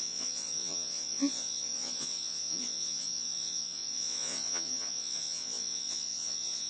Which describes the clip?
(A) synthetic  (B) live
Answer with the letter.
A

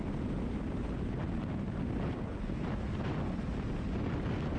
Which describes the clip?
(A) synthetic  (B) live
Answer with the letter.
B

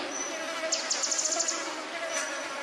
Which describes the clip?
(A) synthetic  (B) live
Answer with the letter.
B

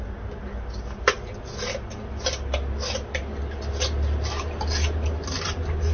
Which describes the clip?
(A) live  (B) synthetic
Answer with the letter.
A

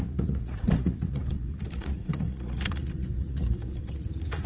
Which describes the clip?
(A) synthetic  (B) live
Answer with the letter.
A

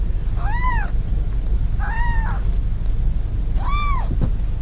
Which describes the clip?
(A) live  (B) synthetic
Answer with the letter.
A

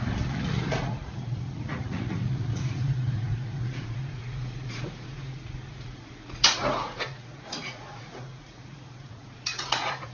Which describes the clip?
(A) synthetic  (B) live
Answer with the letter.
A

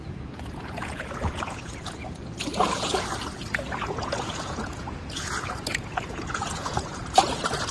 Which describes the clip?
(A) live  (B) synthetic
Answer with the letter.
B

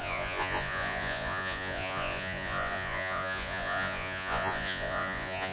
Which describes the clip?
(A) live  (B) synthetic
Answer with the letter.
B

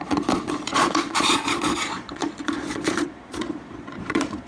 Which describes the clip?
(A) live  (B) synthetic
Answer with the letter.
B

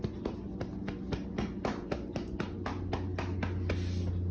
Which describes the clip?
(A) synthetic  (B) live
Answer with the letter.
B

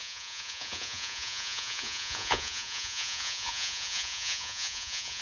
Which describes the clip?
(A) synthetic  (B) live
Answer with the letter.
A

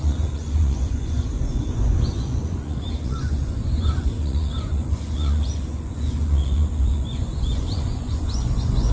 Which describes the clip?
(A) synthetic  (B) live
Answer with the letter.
A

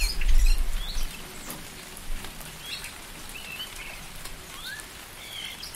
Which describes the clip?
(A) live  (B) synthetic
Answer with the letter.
A